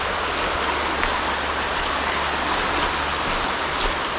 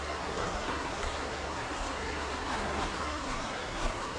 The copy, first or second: second